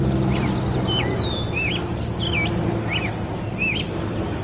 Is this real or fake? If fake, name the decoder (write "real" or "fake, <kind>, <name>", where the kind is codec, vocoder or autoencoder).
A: real